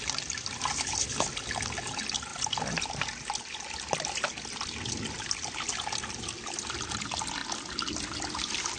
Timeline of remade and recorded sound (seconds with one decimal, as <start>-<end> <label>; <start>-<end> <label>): 0.0-8.8 recorded